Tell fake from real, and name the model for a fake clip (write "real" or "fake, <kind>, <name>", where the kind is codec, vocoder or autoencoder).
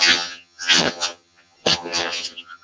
fake, vocoder, HiFi-GAN